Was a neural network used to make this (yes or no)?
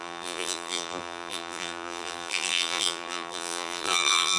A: yes